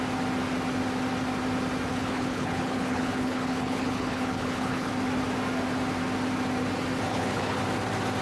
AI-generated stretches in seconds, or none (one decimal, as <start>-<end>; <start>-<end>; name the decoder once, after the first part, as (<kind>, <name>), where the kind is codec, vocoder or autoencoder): 1.9-4.9 (codec, HILCodec); 7.1-7.6